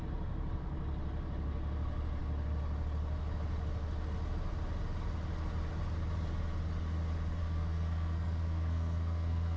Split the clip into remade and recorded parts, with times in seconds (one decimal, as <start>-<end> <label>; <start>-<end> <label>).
0.0-7.4 recorded; 7.4-9.6 remade